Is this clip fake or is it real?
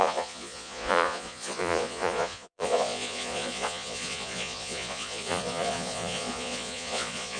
fake